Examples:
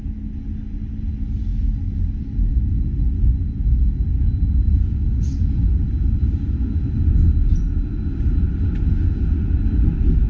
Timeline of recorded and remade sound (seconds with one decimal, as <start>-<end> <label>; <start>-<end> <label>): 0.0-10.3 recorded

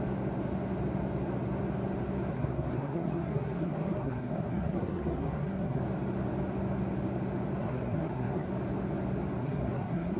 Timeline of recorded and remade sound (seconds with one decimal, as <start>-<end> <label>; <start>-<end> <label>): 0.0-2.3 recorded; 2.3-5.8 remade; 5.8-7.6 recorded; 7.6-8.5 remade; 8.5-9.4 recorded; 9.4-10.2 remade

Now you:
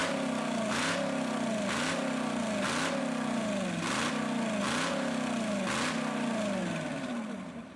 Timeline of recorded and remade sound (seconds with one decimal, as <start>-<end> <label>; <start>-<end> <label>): 0.0-7.8 recorded

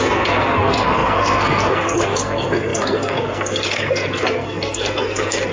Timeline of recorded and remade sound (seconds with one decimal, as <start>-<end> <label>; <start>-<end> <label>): 0.0-5.5 remade

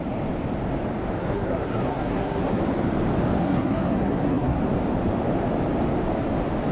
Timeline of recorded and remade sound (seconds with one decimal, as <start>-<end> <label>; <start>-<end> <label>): 0.0-1.2 recorded; 1.2-2.6 remade; 2.6-3.4 recorded; 3.4-4.6 remade; 4.6-6.7 recorded